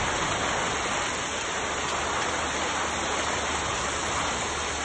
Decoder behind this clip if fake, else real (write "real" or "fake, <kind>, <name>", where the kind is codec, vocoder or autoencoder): real